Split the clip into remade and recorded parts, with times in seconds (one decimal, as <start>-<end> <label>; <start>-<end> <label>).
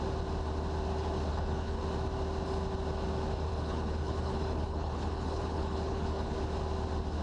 0.0-1.3 recorded; 1.3-1.8 remade; 1.8-3.5 recorded; 3.5-6.4 remade; 6.4-7.2 recorded